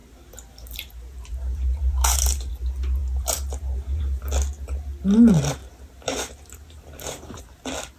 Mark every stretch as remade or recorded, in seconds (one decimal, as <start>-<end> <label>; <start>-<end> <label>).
0.0-2.5 remade; 2.5-3.0 recorded; 3.0-4.0 remade; 4.0-5.6 recorded; 5.6-7.4 remade; 7.4-8.0 recorded